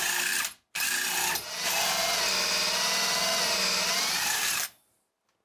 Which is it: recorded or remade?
recorded